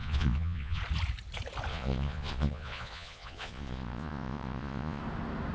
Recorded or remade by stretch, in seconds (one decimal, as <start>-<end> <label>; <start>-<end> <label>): 0.0-0.8 remade; 0.8-1.7 recorded; 1.7-5.0 remade; 5.0-5.5 recorded